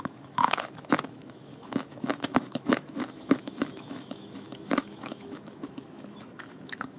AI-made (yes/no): yes